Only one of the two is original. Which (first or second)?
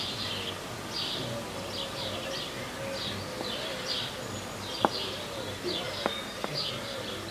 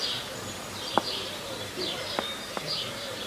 first